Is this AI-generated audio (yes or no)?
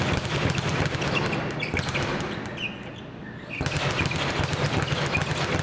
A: no